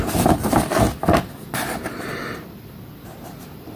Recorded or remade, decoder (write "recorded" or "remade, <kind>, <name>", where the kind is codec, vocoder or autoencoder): recorded